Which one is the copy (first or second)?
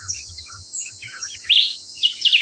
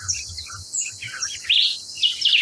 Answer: first